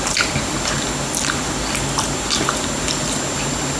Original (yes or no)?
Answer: yes